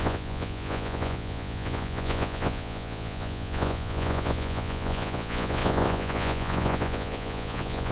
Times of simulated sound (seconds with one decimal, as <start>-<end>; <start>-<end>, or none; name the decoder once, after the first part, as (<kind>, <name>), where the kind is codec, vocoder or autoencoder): 0.0-7.9 (vocoder, Vocos)